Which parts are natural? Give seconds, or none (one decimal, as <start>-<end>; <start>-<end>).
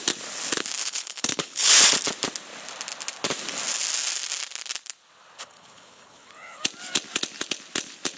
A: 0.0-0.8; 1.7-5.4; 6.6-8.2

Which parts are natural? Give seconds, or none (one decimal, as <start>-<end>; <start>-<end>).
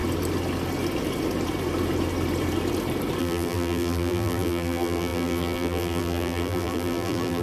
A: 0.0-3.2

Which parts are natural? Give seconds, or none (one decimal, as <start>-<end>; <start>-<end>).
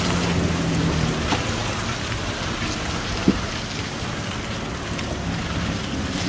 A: 0.0-6.3